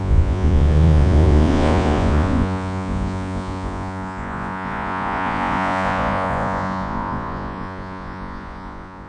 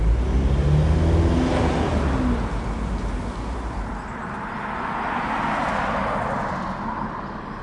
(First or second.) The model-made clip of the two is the first